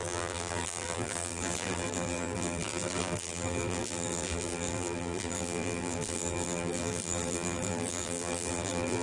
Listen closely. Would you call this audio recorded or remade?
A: remade